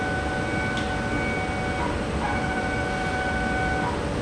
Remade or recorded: recorded